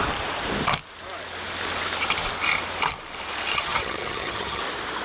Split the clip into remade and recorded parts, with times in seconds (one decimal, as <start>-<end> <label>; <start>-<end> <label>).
0.0-3.5 recorded; 3.5-4.6 remade; 4.6-5.0 recorded

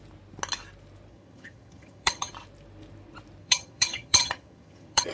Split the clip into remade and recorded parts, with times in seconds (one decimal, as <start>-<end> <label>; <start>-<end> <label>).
0.0-1.1 recorded; 1.1-2.3 remade; 2.3-3.4 recorded; 3.4-5.1 remade

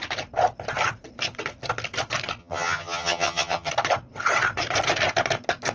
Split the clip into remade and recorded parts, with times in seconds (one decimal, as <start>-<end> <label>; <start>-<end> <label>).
0.0-2.4 recorded; 2.4-3.7 remade; 3.7-5.7 recorded